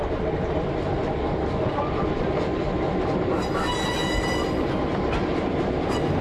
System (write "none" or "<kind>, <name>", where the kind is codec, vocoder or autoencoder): none